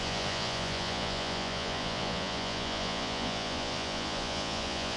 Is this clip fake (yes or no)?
yes